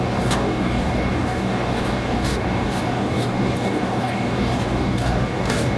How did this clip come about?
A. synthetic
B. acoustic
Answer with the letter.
A